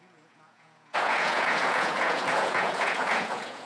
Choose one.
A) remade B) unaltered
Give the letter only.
A